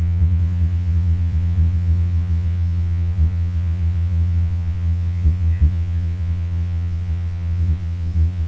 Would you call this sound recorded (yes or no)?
no